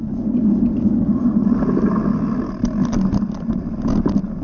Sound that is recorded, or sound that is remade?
recorded